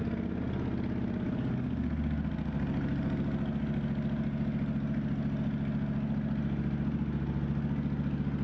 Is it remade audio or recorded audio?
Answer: recorded